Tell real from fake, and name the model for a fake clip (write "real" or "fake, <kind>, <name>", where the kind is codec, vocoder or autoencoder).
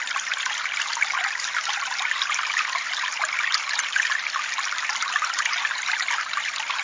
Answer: real